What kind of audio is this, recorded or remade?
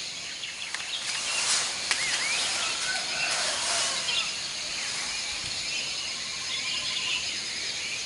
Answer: recorded